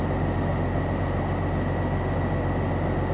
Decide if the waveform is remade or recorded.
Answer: recorded